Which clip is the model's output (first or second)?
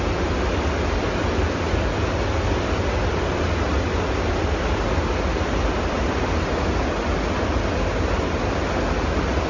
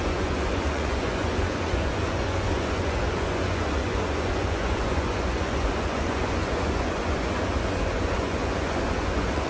second